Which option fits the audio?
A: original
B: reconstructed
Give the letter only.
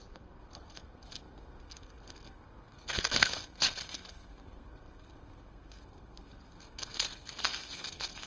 B